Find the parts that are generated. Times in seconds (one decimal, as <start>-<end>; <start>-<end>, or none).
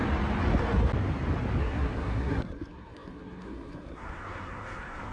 1.6-5.1